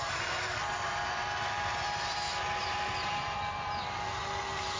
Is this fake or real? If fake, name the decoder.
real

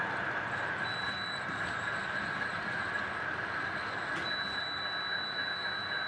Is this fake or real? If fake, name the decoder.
real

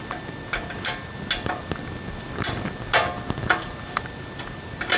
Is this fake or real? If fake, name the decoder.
real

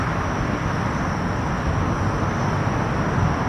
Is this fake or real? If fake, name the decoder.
real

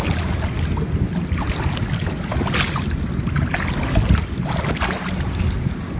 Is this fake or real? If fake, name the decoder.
real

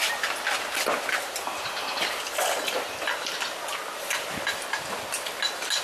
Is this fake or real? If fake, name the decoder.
real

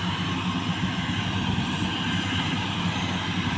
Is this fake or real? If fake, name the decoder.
real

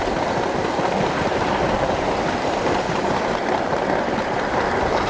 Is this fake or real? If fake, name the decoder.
real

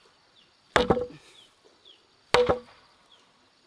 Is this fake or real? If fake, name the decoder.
real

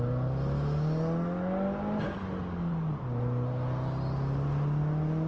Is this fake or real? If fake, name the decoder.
real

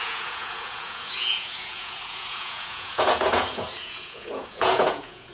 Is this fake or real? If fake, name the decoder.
fake, vocoder, Vocos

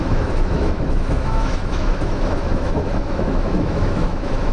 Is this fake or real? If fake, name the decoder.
fake, autoencoder, DAC-VAE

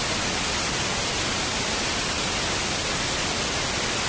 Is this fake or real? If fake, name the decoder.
real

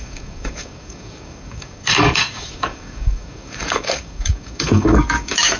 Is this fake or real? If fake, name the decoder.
fake, codec, DAC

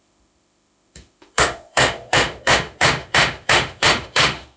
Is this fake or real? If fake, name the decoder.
fake, autoencoder, DAC-VAE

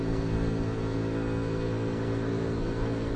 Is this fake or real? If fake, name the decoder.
fake, codec, SNAC